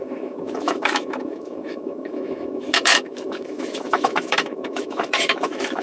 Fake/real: fake